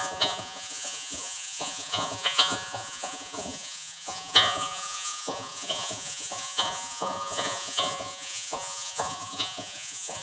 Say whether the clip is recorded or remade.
remade